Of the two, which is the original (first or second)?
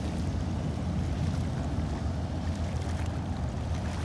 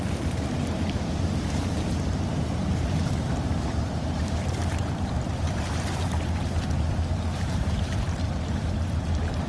first